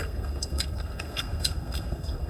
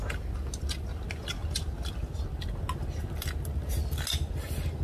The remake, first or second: first